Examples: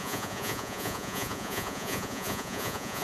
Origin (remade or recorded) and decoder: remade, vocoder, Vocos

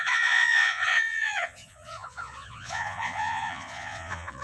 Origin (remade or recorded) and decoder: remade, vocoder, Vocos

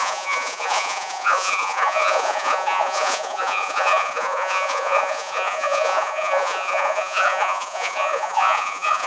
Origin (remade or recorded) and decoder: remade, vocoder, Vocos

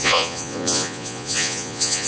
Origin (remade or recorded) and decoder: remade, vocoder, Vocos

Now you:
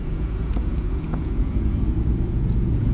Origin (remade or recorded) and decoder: remade, vocoder, Vocos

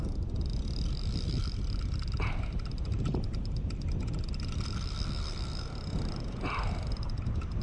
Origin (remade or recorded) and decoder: recorded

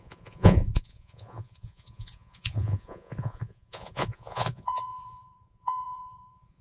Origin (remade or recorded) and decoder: remade, vocoder, Vocos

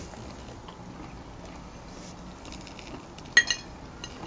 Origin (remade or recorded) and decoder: recorded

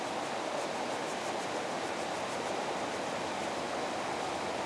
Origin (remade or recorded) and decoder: recorded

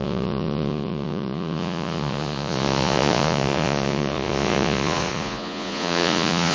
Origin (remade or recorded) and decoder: remade, vocoder, Vocos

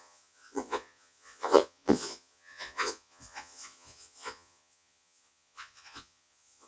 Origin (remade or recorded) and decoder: remade, vocoder, Vocos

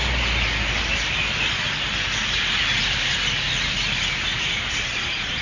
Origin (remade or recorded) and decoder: recorded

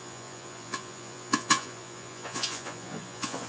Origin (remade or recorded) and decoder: remade, vocoder, Vocos